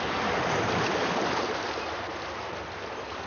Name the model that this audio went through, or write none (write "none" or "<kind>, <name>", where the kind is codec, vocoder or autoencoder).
none